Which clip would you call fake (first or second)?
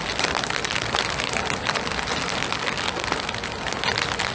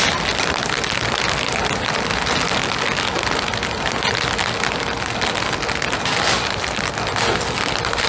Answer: first